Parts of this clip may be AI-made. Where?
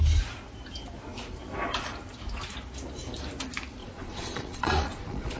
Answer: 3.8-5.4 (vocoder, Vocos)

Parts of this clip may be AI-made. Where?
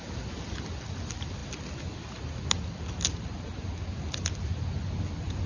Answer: 0.0-1.4 (vocoder, BigVGAN v2); 3.8-5.5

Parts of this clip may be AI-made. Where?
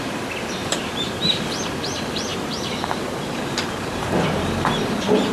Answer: 0.6-1.5 (vocoder, BigVGAN v2); 2.3-4.1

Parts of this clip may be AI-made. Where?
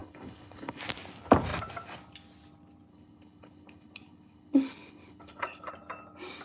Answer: 0.0-0.8 (codec, HILCodec); 2.9-5.7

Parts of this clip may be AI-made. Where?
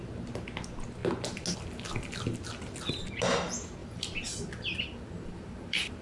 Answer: 3.8-6.0 (vocoder, BigVGAN v2)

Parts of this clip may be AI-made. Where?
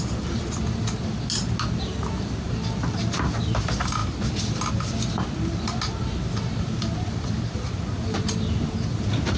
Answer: none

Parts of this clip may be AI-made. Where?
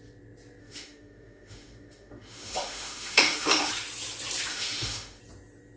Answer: 0.6-3.7 (autoencoder, DAC-VAE); 4.5-5.2